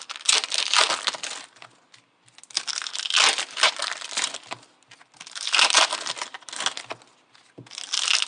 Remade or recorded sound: recorded